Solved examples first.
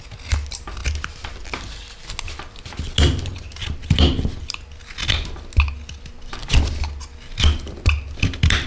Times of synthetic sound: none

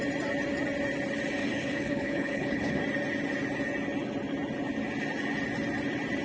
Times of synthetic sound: 1.4-2.8 (codec, HILCodec)

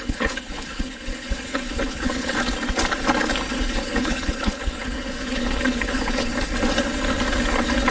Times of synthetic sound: 0.0-2.3 (codec, HILCodec); 3.7-6.3

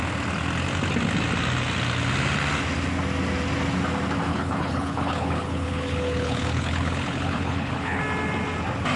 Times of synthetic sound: 4.3-8.0 (codec, HILCodec)

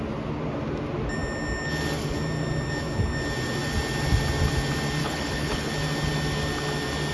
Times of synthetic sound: 5.0-5.7 (codec, HILCodec)

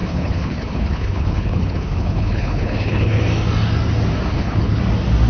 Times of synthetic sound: 0.0-3.2 (codec, HILCodec); 4.3-4.8

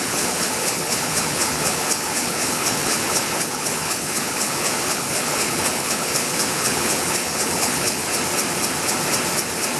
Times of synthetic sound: 0.0-8.0 (codec, HILCodec)